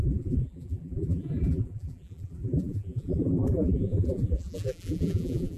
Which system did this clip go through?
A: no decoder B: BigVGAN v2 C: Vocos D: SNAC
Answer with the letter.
B